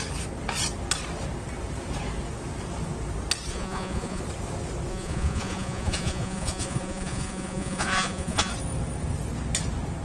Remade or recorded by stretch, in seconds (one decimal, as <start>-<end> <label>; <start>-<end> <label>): 0.0-3.5 recorded; 3.5-4.2 remade; 4.2-4.9 recorded; 4.9-8.5 remade; 8.5-10.0 recorded